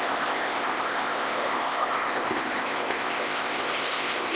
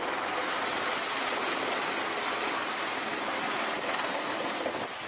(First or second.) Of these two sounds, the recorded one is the second